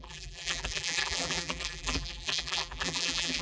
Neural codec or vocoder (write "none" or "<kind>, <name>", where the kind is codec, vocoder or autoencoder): vocoder, BigVGAN v2